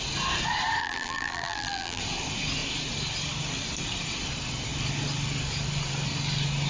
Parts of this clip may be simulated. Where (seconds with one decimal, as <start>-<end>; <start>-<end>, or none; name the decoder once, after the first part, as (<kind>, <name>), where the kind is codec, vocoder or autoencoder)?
0.8-2.0 (vocoder, BigVGAN v2)